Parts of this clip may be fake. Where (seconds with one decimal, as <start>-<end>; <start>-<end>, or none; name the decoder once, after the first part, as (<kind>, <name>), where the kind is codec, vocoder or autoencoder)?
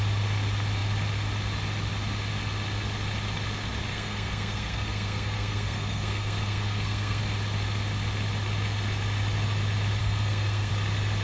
3.9-7.2 (codec, SNAC); 10.0-10.7